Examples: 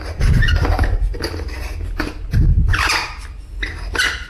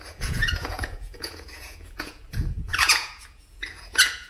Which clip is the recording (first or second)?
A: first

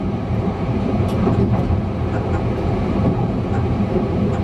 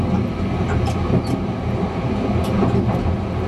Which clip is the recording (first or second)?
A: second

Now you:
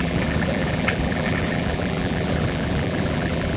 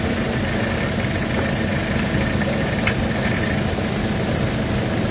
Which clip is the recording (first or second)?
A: second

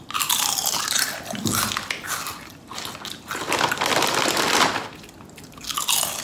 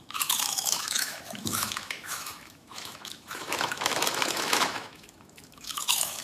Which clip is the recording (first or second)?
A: first